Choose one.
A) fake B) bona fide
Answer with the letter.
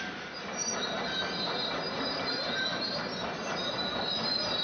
B